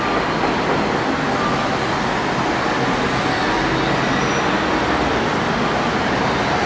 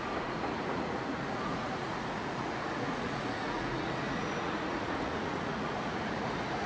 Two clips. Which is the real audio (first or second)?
first